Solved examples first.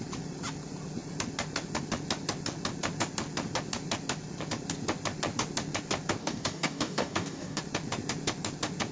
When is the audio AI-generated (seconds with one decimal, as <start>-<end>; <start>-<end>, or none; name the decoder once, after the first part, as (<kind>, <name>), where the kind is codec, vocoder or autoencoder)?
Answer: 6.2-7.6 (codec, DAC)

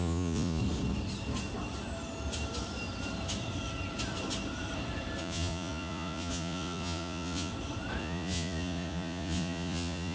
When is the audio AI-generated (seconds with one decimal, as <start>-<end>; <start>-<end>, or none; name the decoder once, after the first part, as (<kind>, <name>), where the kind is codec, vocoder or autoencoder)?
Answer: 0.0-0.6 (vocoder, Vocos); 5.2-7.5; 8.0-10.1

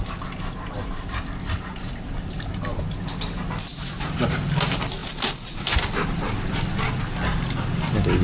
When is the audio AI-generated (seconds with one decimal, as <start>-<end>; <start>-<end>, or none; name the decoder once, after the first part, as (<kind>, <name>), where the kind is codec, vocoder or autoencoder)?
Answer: 3.7-4.3 (vocoder, BigVGAN v2); 5.0-5.8

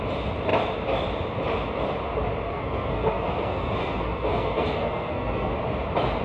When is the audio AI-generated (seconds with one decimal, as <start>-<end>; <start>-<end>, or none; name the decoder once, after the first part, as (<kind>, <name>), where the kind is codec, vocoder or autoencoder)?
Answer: 2.5-5.5 (codec, SNAC)

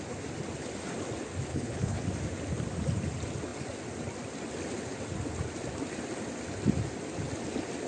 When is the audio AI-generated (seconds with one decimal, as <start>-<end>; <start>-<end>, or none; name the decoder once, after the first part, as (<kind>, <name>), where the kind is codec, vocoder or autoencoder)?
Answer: 1.5-2.0 (codec, HILCodec)

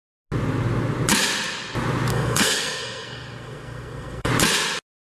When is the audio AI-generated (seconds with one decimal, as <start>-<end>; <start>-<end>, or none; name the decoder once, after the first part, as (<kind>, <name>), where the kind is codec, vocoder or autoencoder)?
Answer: 2.1-4.3 (codec, SNAC)

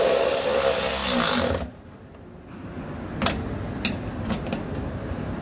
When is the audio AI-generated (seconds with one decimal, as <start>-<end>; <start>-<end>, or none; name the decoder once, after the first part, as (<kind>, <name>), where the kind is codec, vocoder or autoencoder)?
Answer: none

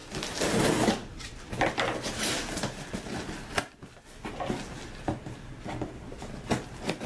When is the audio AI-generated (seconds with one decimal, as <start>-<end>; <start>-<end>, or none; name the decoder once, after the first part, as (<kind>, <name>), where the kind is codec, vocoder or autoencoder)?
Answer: none